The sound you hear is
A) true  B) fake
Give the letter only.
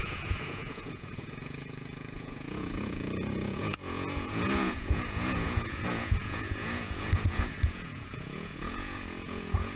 B